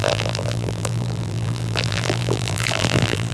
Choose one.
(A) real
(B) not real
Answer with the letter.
B